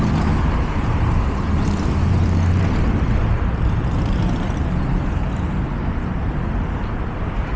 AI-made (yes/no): yes